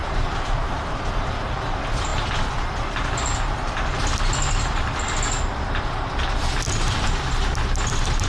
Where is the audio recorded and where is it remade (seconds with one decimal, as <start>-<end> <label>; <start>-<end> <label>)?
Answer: 0.0-1.1 remade; 1.1-8.3 recorded